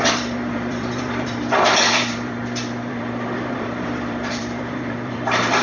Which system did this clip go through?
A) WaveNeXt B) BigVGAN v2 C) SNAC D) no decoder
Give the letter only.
B